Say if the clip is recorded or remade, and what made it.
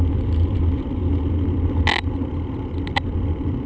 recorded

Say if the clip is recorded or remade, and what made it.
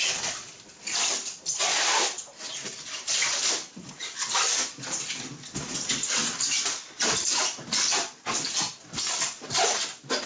remade, vocoder, BigVGAN v2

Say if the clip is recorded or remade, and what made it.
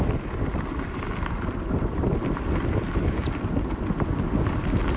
recorded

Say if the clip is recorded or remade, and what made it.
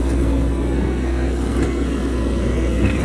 remade, codec, SNAC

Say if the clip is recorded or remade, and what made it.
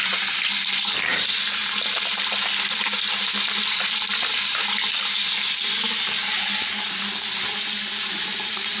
remade, vocoder, BigVGAN v2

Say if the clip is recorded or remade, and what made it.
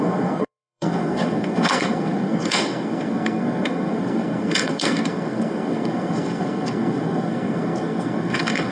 remade, codec, SNAC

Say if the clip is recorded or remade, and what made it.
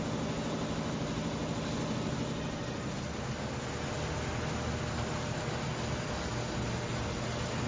recorded